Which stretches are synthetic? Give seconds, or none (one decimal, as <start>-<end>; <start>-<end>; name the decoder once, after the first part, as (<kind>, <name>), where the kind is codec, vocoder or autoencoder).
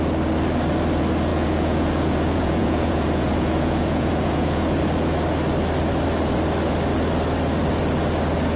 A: 1.3-4.8 (vocoder, Vocos)